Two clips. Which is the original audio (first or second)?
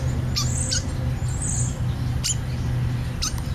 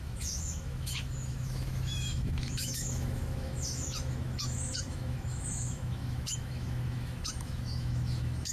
first